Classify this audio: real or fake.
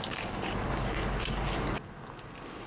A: real